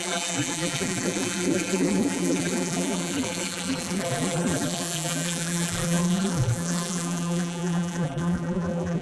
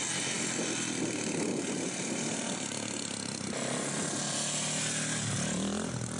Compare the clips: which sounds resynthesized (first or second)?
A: first